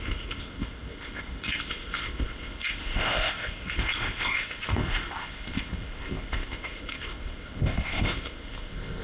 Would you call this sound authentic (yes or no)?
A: no